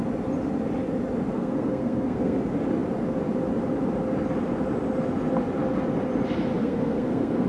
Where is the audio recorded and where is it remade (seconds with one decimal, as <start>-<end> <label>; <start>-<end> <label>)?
0.0-1.3 recorded; 1.3-2.4 remade; 2.4-6.6 recorded; 6.6-7.5 remade